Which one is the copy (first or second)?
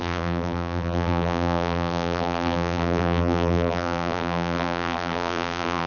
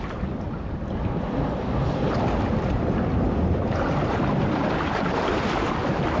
first